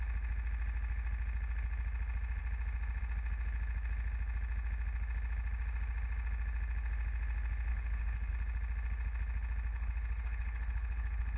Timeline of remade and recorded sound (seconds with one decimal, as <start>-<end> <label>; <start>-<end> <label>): 0.0-7.7 recorded; 7.7-8.3 remade; 8.3-9.7 recorded; 9.7-11.4 remade